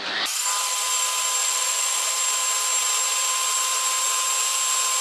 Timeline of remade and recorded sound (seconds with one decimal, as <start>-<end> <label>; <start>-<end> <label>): 0.0-1.4 recorded; 1.4-2.1 remade; 2.1-5.0 recorded